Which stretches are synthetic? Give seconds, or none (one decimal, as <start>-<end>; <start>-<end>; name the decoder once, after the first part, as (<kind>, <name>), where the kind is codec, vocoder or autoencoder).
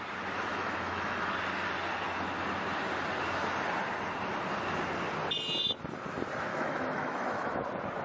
0.5-1.3 (autoencoder, DAC-VAE); 6.5-7.6